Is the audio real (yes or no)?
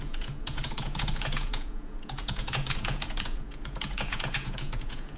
no